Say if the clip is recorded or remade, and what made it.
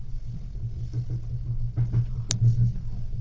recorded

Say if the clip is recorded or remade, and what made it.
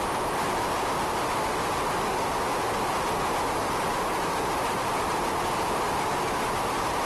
recorded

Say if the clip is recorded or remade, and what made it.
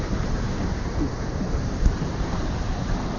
remade, vocoder, BigVGAN v2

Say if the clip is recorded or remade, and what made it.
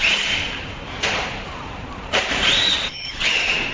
remade, vocoder, BigVGAN v2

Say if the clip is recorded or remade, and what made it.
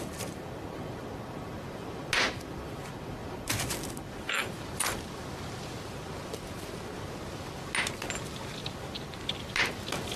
recorded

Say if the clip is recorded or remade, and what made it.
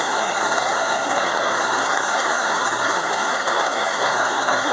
remade, codec, SNAC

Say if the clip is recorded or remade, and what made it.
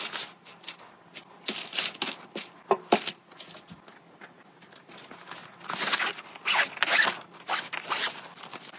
recorded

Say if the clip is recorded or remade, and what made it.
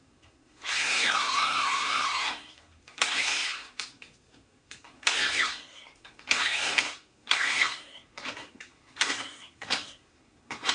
remade, codec, SNAC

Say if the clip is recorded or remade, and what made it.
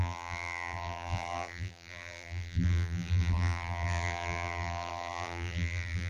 remade, vocoder, BigVGAN v2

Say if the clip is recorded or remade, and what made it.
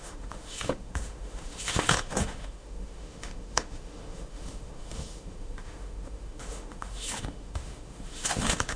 remade, autoencoder, DAC-VAE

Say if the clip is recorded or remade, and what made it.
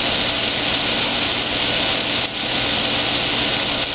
recorded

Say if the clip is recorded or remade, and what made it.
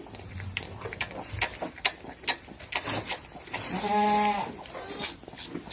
recorded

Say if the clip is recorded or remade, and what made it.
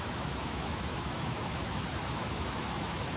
remade, autoencoder, DAC-VAE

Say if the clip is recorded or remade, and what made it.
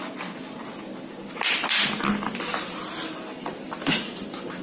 recorded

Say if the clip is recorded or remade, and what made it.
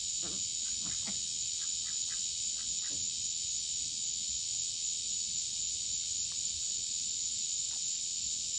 recorded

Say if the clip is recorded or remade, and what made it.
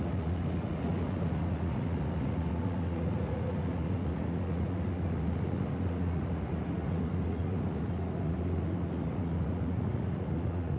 remade, vocoder, Vocos